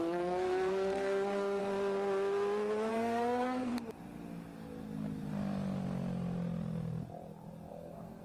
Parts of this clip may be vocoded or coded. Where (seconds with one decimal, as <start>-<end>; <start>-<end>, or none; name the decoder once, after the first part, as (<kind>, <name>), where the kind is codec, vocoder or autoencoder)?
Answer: 0.0-1.6 (codec, SNAC); 2.9-3.7; 7.7-8.2